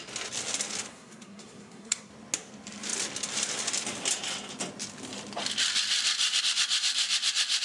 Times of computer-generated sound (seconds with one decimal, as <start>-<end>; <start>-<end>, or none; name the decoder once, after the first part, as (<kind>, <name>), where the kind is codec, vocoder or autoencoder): 0.9-2.1 (codec, SNAC)